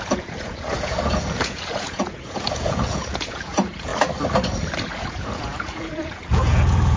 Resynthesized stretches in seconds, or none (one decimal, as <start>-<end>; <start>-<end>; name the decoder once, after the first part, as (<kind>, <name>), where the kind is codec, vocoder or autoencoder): 0.0-3.9 (vocoder, Vocos); 4.9-7.0